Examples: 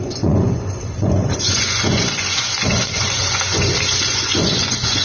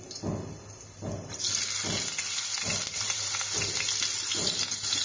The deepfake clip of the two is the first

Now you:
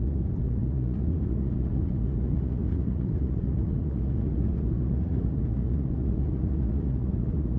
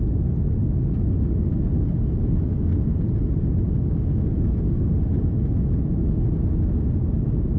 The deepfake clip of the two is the first